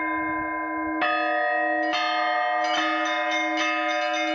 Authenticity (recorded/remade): recorded